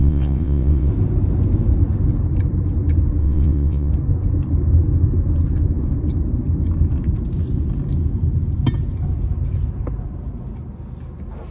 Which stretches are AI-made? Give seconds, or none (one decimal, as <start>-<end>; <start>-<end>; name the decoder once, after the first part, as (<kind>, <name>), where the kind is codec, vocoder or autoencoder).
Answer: 0.0-0.9 (vocoder, WaveNeXt); 3.2-3.9